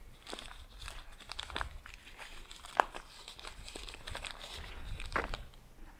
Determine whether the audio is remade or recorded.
recorded